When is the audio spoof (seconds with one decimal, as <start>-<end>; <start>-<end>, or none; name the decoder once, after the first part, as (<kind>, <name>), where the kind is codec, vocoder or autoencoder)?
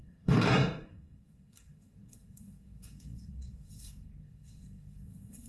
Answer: 0.0-5.5 (codec, SNAC)